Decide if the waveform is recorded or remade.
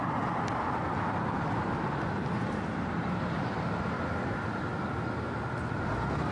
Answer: recorded